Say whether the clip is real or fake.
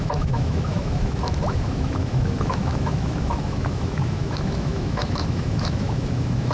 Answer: fake